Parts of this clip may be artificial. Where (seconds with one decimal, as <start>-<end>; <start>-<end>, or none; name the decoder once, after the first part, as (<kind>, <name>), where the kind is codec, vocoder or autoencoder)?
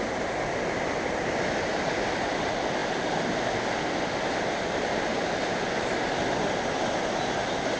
none